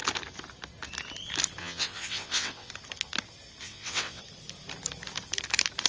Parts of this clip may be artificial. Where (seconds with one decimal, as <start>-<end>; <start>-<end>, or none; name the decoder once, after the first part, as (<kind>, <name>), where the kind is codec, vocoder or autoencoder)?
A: 1.6-2.7 (vocoder, WaveNeXt); 3.6-4.2